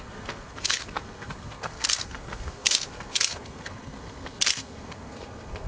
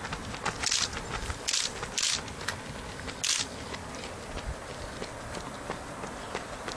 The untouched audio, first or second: second